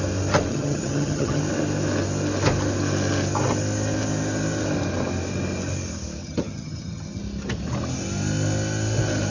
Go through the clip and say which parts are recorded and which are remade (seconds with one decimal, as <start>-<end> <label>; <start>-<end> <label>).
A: 0.0-0.5 recorded; 0.5-1.4 remade; 1.4-6.2 recorded; 6.2-7.2 remade; 7.2-9.3 recorded